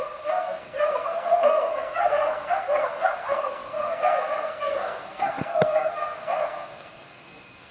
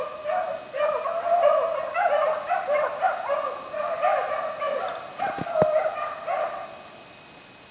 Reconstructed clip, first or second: first